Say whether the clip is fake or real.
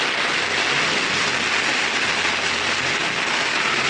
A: real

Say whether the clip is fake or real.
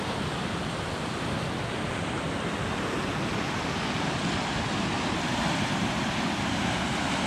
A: real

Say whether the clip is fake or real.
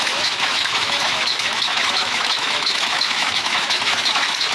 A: fake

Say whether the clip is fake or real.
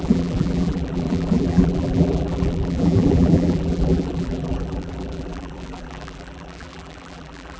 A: fake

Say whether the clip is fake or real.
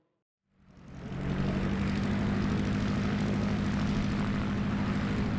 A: real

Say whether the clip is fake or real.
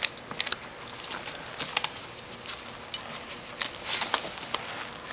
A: real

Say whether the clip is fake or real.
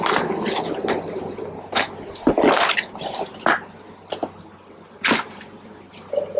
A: real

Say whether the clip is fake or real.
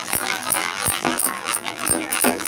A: fake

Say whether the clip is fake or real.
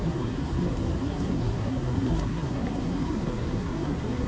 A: fake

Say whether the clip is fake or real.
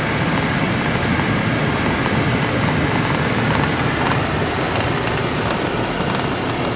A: real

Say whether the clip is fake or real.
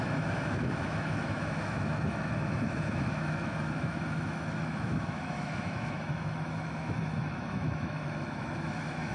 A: fake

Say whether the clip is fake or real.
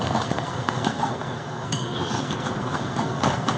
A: fake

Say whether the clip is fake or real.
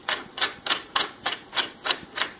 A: fake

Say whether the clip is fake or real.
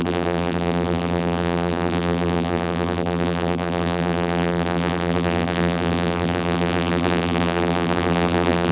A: fake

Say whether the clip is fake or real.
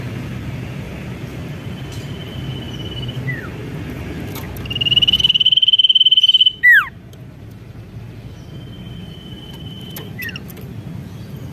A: real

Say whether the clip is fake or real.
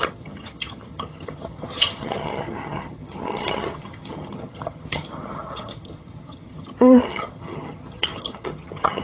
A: fake